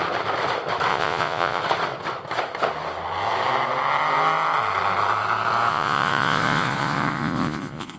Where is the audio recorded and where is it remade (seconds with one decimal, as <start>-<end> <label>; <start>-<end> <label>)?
0.0-0.9 recorded; 0.9-1.6 remade; 1.6-5.7 recorded; 5.7-8.0 remade